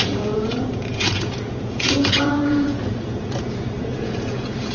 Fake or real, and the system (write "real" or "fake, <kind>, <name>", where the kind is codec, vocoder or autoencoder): fake, vocoder, Vocos